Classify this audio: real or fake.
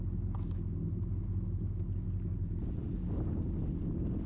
real